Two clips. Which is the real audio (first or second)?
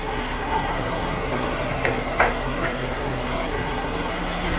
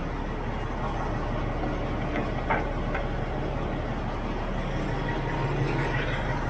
second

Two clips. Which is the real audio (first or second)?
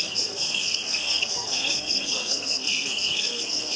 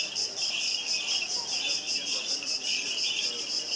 second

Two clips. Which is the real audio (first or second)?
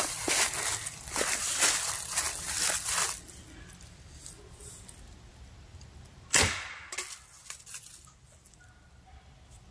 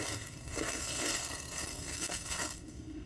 first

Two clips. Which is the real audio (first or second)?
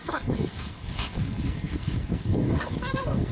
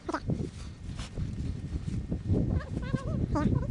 second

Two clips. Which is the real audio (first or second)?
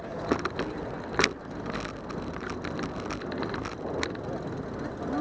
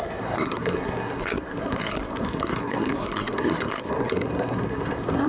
first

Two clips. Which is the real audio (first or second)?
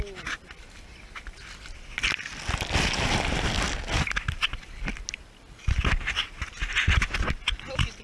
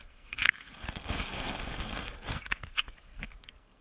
first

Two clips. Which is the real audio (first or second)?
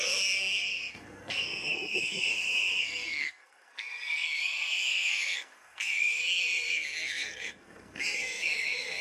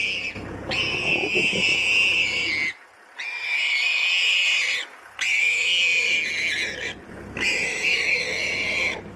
second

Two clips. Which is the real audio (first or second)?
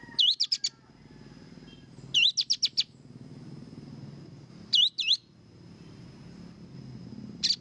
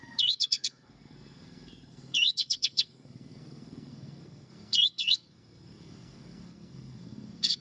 first